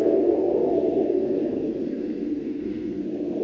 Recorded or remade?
remade